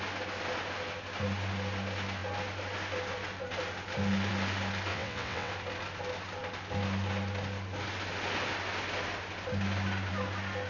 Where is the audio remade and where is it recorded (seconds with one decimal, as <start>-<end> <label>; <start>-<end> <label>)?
0.0-4.9 recorded; 4.9-5.5 remade; 5.5-10.7 recorded

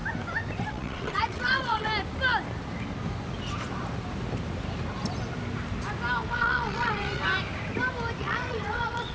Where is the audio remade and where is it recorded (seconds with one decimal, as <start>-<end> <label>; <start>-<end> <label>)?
0.0-0.7 recorded; 0.7-1.9 remade; 1.9-6.3 recorded; 6.3-7.2 remade; 7.2-8.2 recorded; 8.2-9.1 remade

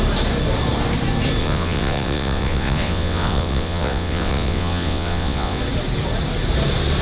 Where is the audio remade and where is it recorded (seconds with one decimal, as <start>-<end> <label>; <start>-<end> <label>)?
0.0-1.4 recorded; 1.4-5.6 remade; 5.6-7.0 recorded

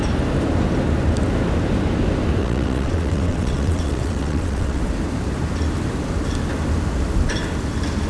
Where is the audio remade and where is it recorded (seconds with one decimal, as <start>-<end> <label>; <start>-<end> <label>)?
0.0-2.4 recorded; 2.4-4.8 remade; 4.8-8.1 recorded